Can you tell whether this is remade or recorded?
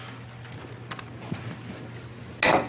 recorded